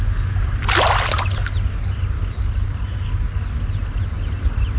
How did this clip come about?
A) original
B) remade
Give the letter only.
A